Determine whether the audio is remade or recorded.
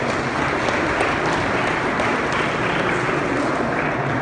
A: recorded